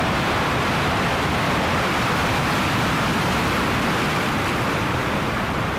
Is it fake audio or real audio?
real